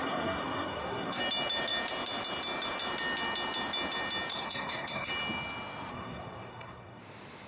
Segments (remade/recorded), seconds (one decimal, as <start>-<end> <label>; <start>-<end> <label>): 0.0-1.2 remade; 1.2-4.3 recorded; 4.3-5.1 remade; 5.1-5.9 recorded; 5.9-7.0 remade; 7.0-7.5 recorded